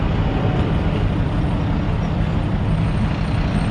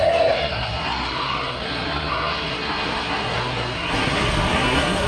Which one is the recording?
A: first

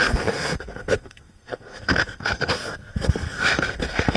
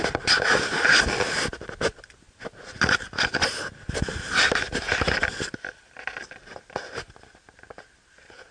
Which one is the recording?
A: second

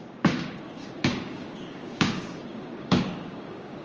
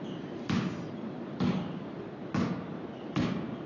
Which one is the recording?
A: second